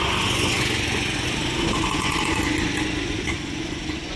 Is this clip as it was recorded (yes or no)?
no